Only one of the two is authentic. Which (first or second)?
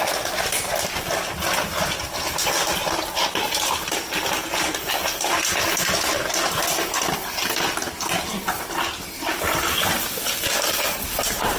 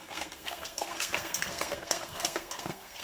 first